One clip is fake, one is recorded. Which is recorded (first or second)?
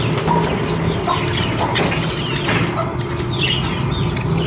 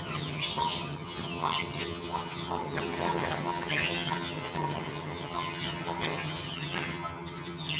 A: first